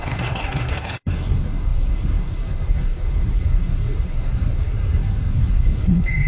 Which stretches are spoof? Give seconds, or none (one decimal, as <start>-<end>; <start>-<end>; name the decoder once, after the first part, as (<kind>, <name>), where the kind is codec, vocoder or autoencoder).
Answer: 0.0-6.3 (codec, SNAC)